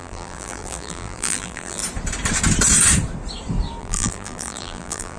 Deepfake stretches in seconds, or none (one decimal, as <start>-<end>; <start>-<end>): 0.0-1.8; 3.8-5.2